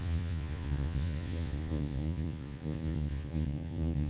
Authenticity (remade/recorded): remade